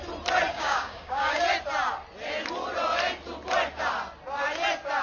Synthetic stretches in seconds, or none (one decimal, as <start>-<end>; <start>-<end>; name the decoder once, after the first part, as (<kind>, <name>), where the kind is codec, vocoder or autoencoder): 0.5-1.4 (codec, DAC)